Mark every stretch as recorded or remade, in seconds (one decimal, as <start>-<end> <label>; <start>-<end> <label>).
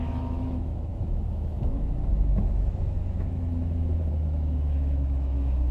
0.0-5.7 remade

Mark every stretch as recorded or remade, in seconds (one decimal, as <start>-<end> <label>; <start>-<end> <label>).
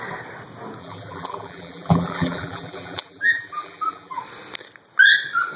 0.0-0.8 recorded; 0.8-4.2 remade; 4.2-5.6 recorded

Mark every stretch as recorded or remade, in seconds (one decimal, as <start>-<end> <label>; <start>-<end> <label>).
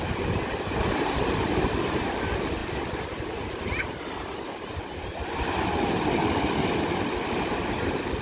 0.0-8.2 recorded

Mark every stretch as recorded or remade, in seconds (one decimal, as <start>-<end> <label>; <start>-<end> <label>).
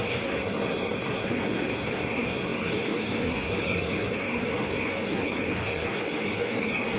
0.0-7.0 remade